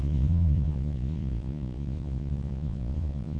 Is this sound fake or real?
fake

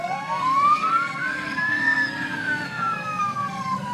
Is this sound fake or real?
fake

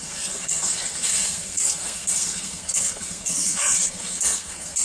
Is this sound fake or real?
fake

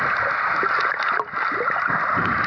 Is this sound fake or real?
real